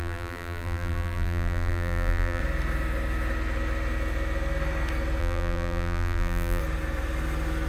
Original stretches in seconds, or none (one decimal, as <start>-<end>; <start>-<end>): 2.4-5.2; 6.6-7.7

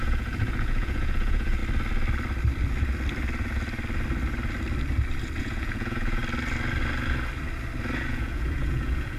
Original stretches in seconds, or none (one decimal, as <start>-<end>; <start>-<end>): 1.6-5.4; 6.2-8.1

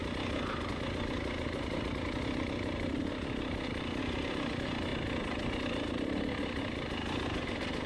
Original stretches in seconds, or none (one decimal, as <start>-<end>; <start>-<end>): 0.0-7.9